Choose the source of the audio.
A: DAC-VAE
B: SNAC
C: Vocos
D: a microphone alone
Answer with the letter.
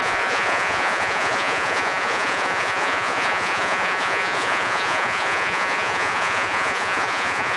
C